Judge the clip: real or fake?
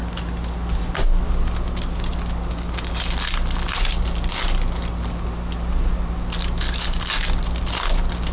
real